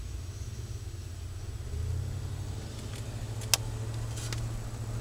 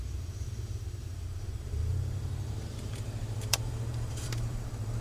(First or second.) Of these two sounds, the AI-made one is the second